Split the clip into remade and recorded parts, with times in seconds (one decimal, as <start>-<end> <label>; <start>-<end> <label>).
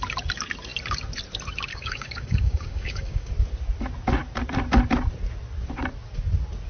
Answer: 0.0-1.7 recorded; 1.7-3.3 remade; 3.3-6.7 recorded